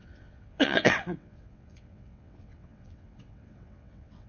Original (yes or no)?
no